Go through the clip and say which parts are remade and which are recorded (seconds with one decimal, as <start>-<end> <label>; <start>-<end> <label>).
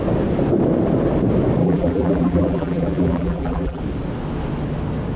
0.0-1.6 recorded; 1.6-3.8 remade; 3.8-5.2 recorded